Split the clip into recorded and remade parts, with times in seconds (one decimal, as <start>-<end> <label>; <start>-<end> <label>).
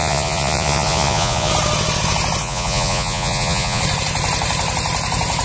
0.0-1.5 remade; 1.5-2.4 recorded; 2.4-3.8 remade; 3.8-5.4 recorded